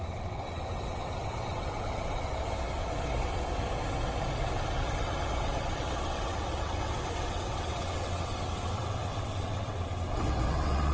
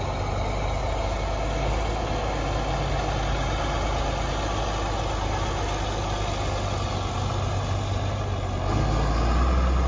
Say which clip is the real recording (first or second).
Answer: second